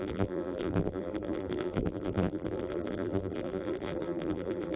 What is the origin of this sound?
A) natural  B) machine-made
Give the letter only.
B